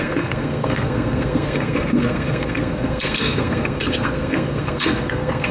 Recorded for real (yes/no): no